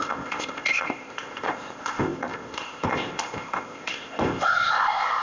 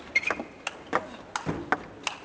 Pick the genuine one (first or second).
second